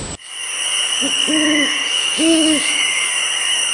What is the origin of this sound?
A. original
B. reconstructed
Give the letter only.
B